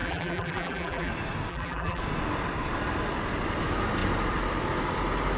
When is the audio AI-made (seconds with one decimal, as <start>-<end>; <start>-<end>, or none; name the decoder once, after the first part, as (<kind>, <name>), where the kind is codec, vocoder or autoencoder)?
0.0-1.1 (vocoder, BigVGAN v2); 1.5-2.0